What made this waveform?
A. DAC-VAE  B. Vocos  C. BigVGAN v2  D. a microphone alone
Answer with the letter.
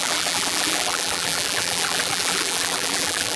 C